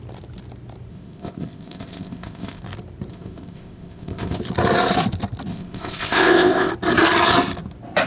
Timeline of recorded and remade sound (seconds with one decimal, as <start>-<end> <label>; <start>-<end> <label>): 0.0-0.9 recorded; 0.9-2.6 remade; 2.6-3.1 recorded; 3.1-4.4 remade; 4.4-5.5 recorded; 5.5-6.7 remade; 6.7-8.1 recorded